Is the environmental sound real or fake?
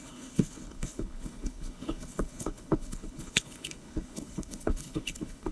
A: fake